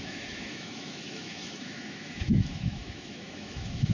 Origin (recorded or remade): remade